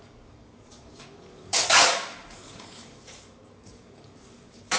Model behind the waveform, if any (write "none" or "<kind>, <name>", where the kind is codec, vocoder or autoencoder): codec, DAC